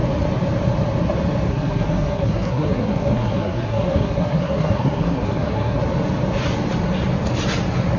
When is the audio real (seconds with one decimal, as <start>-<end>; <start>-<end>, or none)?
0.0-1.5; 5.8-8.0